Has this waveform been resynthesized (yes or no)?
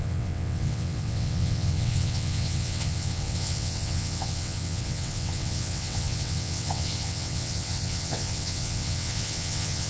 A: yes